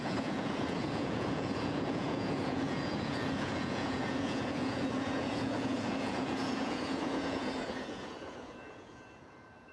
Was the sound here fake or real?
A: fake